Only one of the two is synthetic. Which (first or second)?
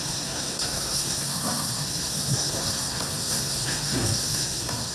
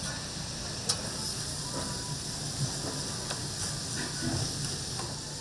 first